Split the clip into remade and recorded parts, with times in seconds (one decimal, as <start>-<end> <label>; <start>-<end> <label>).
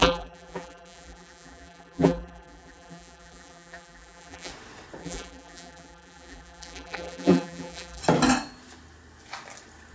0.0-4.5 remade; 4.5-5.0 recorded; 5.0-8.0 remade; 8.0-9.9 recorded